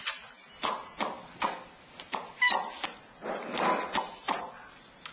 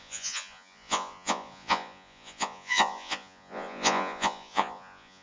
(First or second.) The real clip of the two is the first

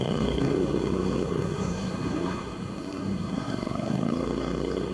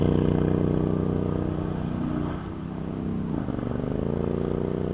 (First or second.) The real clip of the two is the second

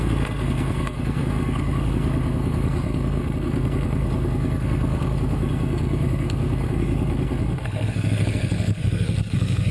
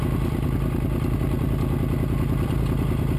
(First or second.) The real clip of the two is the second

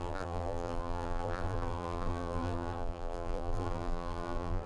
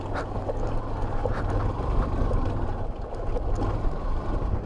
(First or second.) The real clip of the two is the second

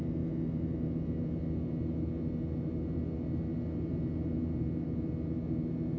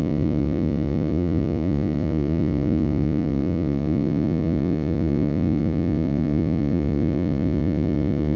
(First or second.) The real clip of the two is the first